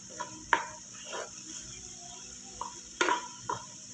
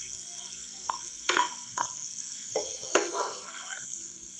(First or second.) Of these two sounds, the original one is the first